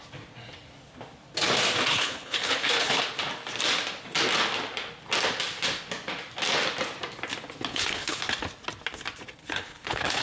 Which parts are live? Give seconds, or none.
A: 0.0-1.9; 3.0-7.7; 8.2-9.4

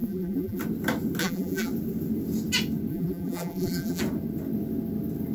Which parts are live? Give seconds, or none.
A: 0.6-1.2; 1.7-2.9; 4.0-5.3

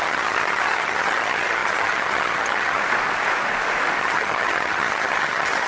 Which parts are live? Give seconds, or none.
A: 2.8-4.0

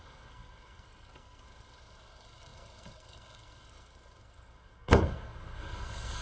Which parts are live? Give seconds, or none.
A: none

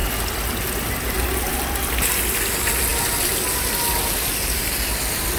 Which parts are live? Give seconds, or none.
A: 0.0-5.4

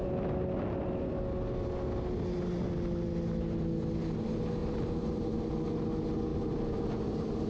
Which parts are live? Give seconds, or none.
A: 0.0-4.6; 5.4-6.3